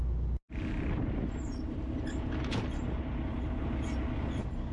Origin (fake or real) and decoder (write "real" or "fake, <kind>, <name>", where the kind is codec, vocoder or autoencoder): real